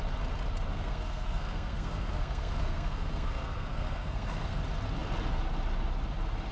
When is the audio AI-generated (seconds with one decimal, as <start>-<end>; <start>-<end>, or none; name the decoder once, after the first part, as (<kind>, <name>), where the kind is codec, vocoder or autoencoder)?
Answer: 0.7-4.6 (codec, SNAC)